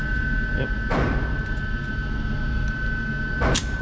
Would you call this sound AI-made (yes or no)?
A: no